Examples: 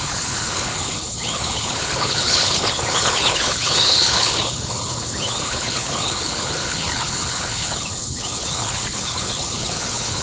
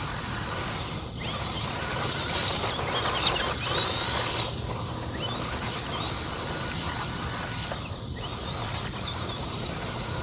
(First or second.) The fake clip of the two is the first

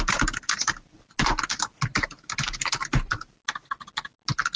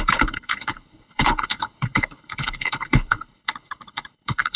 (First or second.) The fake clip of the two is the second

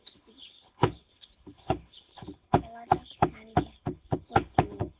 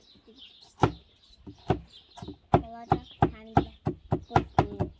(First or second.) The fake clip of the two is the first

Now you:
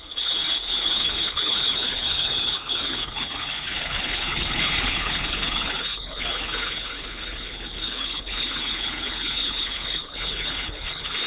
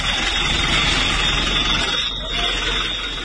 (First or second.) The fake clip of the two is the first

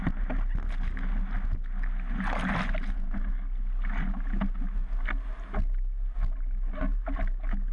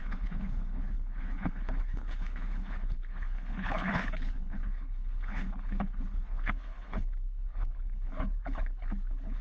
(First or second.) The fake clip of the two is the second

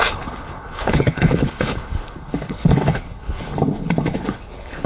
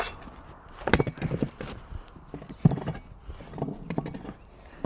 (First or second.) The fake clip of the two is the first